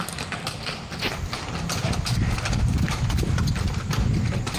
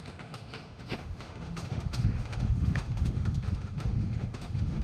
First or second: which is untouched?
first